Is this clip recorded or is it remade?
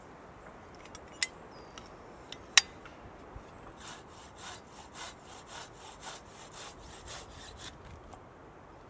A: recorded